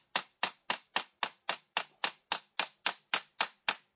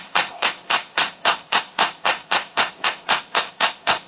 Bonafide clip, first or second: first